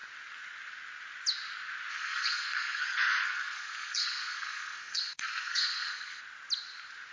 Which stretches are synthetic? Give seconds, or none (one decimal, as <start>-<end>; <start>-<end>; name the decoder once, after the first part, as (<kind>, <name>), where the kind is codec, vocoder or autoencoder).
1.9-6.2 (codec, SNAC)